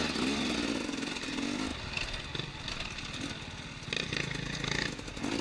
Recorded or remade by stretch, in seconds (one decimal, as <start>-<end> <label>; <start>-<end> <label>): 0.0-5.4 recorded